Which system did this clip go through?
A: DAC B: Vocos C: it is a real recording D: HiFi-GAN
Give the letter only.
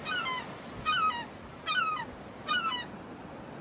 C